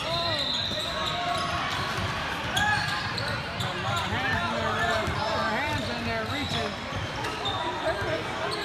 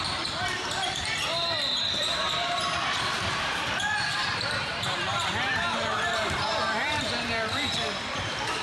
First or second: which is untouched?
first